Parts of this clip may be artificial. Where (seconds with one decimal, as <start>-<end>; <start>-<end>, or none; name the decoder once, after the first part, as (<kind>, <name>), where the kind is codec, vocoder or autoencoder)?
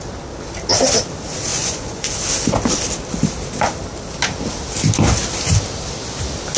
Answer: 1.5-2.1 (vocoder, Vocos)